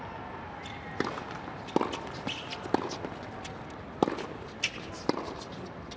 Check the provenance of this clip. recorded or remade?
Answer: recorded